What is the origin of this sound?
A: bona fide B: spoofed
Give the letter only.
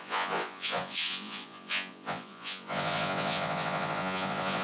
B